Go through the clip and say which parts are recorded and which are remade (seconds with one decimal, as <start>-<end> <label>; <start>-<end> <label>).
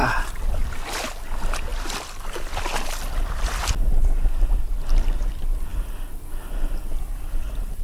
0.0-0.7 remade; 0.7-1.7 recorded; 1.7-3.7 remade; 3.7-7.8 recorded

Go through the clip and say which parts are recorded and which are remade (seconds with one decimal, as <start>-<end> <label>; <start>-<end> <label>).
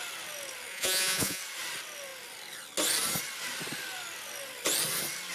0.0-0.7 recorded; 0.7-1.4 remade; 1.4-5.3 recorded